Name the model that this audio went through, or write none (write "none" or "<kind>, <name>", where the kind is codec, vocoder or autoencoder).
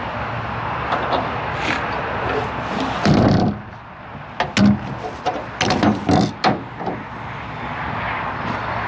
none